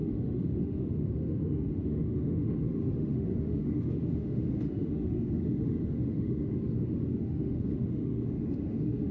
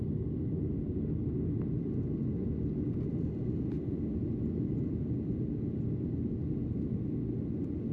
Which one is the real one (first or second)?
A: second